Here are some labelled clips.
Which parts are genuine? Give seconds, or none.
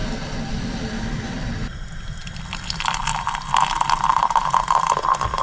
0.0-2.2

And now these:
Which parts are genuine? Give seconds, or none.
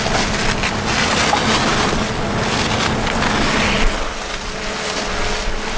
0.0-5.8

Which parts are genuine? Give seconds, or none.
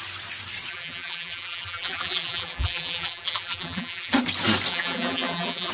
0.0-0.7; 4.1-4.7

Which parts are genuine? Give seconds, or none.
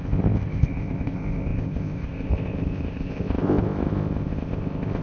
none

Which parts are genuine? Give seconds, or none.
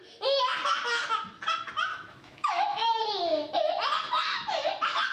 0.0-1.9; 3.0-5.1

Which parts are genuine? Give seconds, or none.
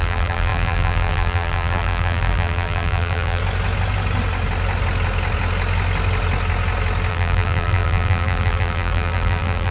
3.4-7.1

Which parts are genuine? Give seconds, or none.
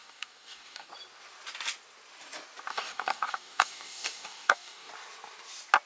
0.9-2.7; 4.9-5.9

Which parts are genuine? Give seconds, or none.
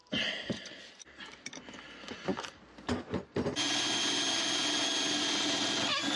0.9-6.2